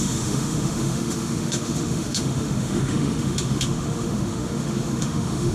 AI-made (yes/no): yes